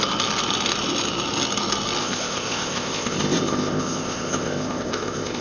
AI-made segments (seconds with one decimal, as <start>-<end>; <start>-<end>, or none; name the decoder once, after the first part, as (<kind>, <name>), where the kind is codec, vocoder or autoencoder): 2.0-5.4 (codec, ZipCodec)